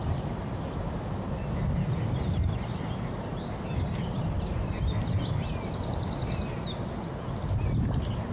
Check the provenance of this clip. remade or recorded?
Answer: recorded